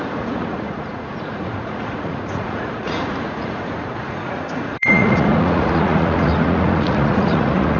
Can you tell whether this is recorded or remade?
remade